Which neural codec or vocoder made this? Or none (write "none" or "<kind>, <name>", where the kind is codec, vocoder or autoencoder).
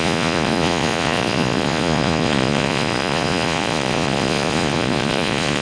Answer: vocoder, Vocos